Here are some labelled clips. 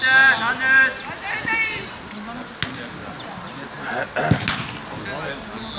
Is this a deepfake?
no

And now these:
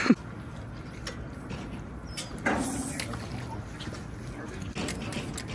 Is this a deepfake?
no